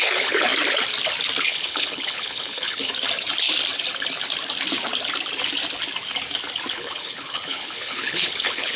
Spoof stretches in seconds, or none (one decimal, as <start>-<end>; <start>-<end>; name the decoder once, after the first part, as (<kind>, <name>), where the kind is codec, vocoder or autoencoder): 0.0-0.5 (codec, HILCodec); 1.4-2.9; 6.7-8.8